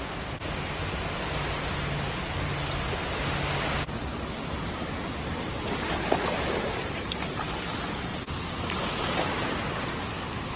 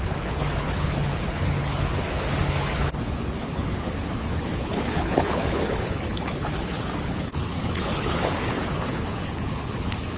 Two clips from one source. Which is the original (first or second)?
first